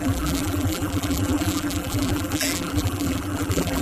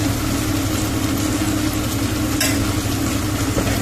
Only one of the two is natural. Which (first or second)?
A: second